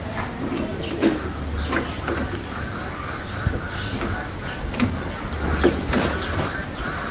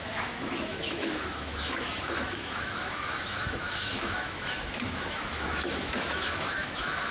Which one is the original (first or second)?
first